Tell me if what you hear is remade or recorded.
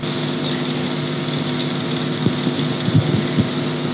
recorded